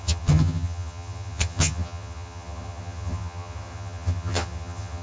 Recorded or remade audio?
remade